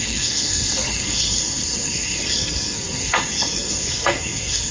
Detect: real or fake fake